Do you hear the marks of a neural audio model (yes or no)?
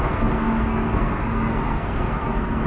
yes